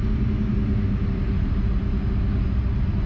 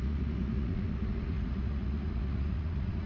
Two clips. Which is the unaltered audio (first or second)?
first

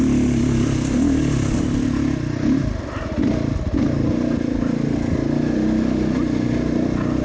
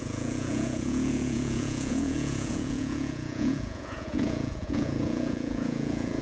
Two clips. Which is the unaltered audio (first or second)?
first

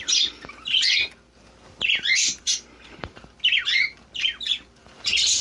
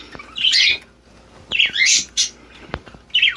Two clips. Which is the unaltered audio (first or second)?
second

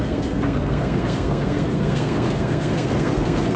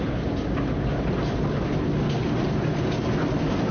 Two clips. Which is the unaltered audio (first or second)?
second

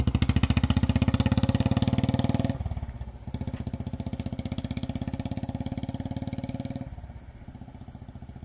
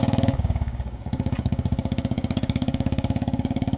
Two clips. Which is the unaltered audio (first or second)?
first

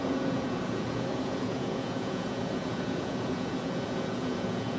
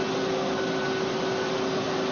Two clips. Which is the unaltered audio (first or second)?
second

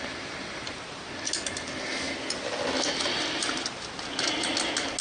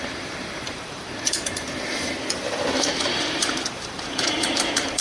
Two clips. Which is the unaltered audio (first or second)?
first